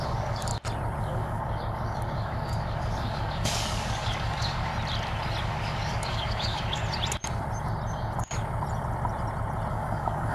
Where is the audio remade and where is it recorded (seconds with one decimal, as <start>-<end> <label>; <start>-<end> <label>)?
0.0-0.5 remade; 0.5-1.0 recorded; 1.0-4.7 remade; 4.7-5.4 recorded; 5.4-6.8 remade; 6.8-9.7 recorded; 9.7-10.3 remade